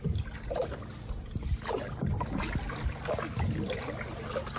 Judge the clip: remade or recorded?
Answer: recorded